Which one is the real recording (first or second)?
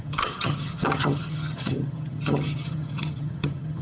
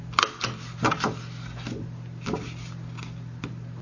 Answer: second